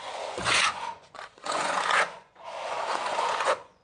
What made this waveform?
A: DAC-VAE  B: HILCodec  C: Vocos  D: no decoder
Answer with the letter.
C